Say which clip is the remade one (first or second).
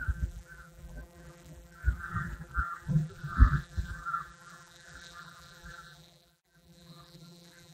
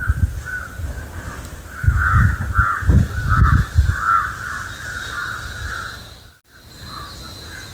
first